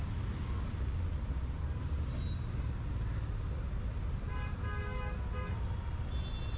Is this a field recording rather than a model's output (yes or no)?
yes